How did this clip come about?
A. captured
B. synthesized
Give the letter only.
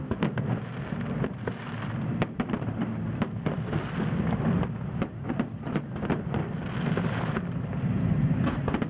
B